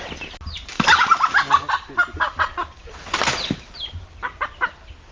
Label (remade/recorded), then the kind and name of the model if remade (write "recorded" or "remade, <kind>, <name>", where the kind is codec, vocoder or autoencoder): recorded